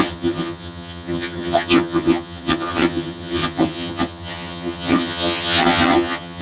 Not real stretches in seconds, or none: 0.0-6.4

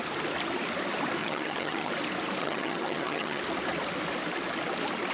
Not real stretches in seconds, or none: 1.2-1.9; 2.4-3.4

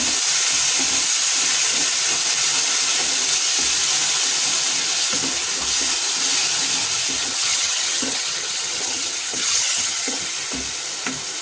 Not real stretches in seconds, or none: 7.2-10.3

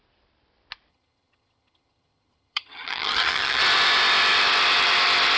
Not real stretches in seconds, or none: 0.9-3.6

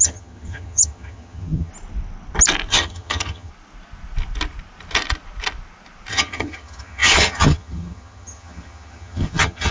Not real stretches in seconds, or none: 0.0-1.7; 2.7-3.5; 6.1-9.7

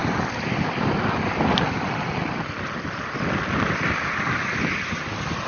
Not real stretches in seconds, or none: none

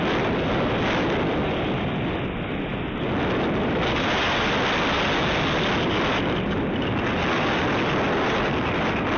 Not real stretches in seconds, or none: none

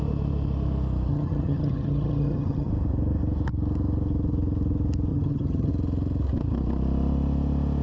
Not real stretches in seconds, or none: 1.1-2.7; 5.1-5.7